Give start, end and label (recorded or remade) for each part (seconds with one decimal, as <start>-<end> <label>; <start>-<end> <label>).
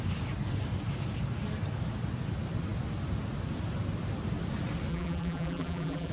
0.0-4.9 recorded; 4.9-6.1 remade